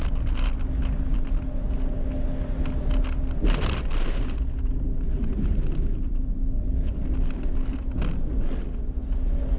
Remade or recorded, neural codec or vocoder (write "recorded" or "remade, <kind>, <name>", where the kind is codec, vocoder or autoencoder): recorded